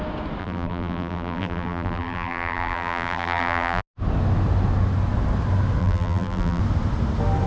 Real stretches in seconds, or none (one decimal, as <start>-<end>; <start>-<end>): 0.0-0.4; 3.8-5.8; 6.6-7.5